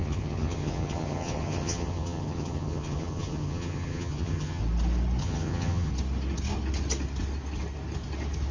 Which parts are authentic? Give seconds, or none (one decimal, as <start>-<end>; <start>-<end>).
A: 4.6-5.2; 5.9-8.5